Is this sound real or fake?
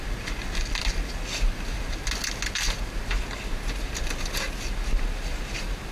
real